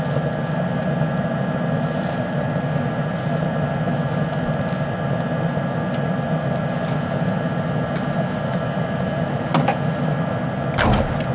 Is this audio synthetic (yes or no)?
no